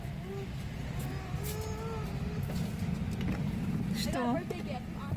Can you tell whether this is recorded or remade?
recorded